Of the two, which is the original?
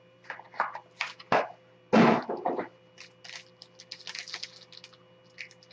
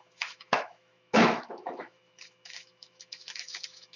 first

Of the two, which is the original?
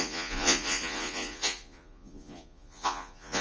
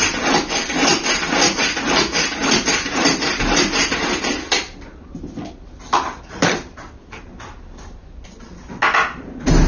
second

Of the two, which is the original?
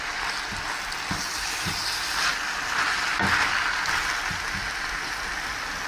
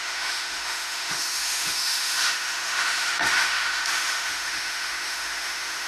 first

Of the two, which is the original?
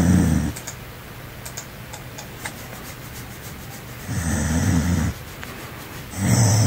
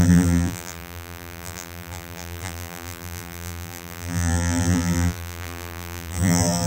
first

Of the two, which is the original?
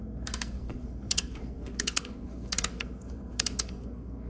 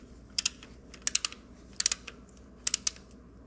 second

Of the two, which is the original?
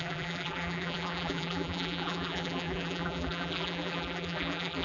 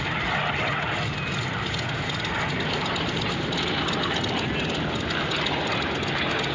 second